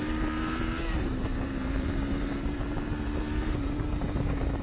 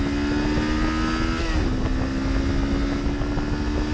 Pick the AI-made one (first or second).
first